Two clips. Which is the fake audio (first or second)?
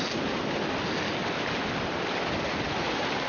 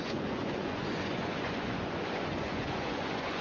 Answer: second